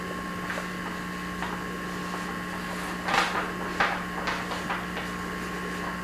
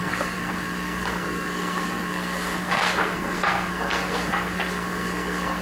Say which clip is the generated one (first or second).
second